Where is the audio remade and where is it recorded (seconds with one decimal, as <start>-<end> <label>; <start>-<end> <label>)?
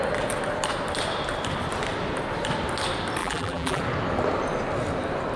0.0-3.2 recorded; 3.2-3.8 remade; 3.8-5.4 recorded